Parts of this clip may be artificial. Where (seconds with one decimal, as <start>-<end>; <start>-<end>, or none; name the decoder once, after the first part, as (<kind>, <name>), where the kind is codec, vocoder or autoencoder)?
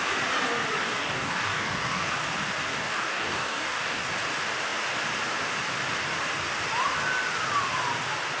0.8-2.1 (codec, DAC); 2.7-4.1